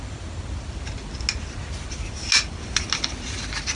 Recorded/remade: recorded